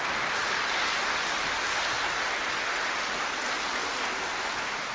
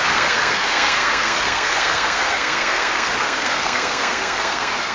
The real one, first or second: first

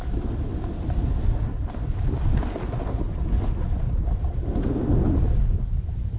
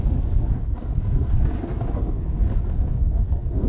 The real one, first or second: first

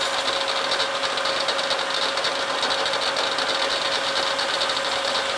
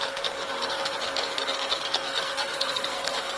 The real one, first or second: first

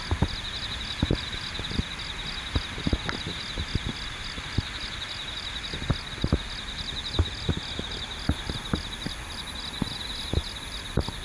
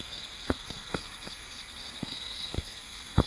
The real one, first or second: first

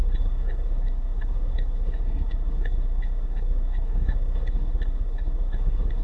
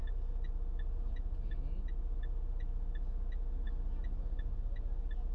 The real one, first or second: second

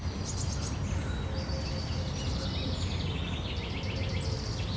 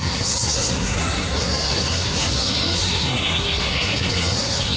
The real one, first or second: first